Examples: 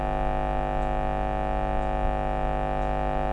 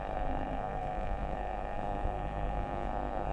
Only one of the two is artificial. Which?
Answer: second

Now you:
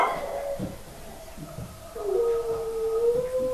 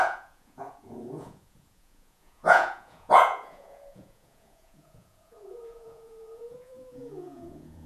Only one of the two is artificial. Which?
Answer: second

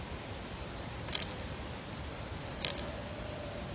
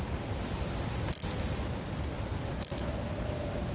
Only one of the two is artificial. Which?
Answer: first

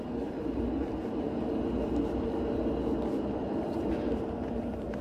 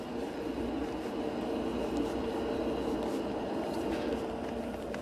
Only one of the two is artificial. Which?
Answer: first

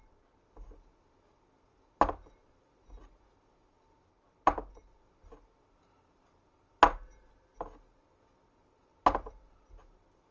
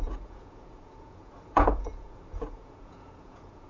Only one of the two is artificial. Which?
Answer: second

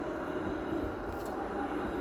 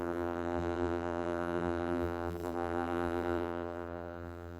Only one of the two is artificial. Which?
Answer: second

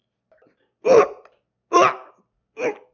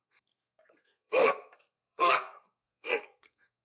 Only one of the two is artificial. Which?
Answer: second